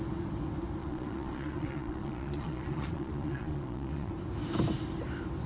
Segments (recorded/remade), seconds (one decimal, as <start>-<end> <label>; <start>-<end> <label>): 0.0-0.8 recorded; 0.8-4.1 remade; 4.1-5.5 recorded